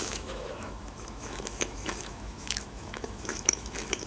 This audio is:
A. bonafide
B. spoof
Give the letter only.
B